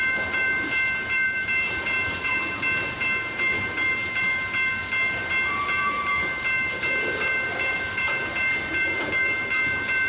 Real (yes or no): no